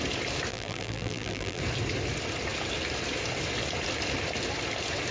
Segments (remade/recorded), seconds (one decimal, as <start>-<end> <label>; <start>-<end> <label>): 0.0-0.5 recorded; 0.5-1.6 remade; 1.6-5.1 recorded

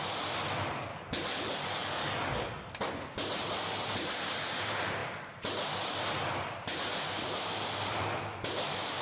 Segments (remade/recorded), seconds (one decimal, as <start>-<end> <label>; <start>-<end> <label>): 0.0-0.9 recorded; 0.9-2.7 remade; 2.7-9.0 recorded

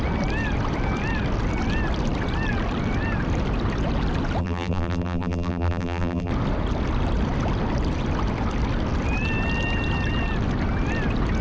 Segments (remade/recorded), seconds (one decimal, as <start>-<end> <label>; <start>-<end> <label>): 0.0-4.4 recorded; 4.4-6.3 remade; 6.3-11.4 recorded

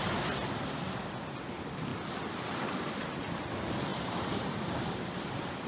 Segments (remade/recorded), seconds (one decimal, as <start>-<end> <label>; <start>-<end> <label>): 0.0-3.9 recorded; 3.9-5.0 remade; 5.0-5.7 recorded

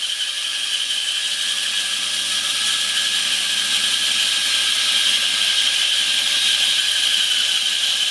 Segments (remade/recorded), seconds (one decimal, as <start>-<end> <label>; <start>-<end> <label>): 0.0-0.5 recorded; 0.5-1.2 remade; 1.2-8.1 recorded

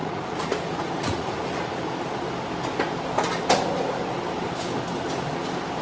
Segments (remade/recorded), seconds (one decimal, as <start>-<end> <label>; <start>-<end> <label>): 0.0-1.4 remade; 1.4-5.8 recorded

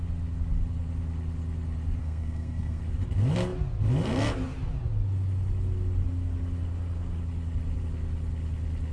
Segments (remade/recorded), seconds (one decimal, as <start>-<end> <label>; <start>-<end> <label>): 0.0-2.0 recorded; 2.0-2.8 remade; 2.8-8.9 recorded

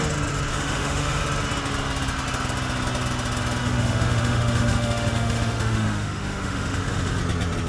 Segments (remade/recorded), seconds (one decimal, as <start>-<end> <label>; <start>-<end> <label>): 0.0-0.5 recorded; 0.5-1.2 remade; 1.2-3.6 recorded; 3.6-7.2 remade; 7.2-7.7 recorded